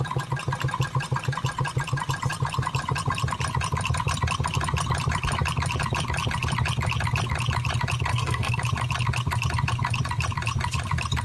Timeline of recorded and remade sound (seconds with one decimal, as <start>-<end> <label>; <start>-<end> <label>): 0.0-8.1 recorded; 8.1-8.6 remade; 8.6-11.2 recorded